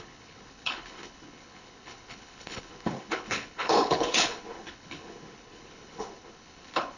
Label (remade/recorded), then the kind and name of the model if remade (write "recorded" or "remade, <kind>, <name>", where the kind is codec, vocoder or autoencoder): remade, codec, HILCodec